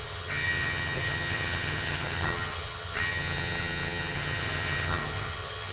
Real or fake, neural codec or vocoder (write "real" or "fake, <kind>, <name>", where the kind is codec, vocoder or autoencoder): fake, vocoder, HiFi-GAN